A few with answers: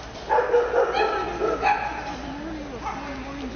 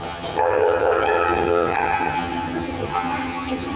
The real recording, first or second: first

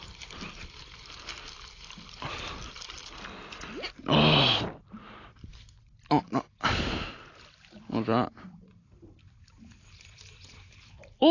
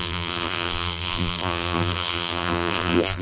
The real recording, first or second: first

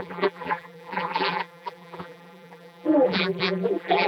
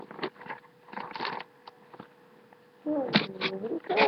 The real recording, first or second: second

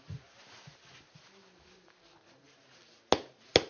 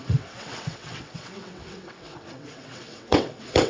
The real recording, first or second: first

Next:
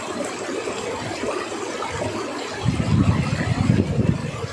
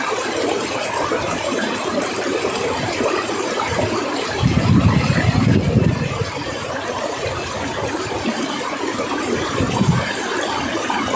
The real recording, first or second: first